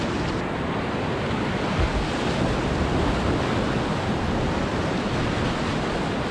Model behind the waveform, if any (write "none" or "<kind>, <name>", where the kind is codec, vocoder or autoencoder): none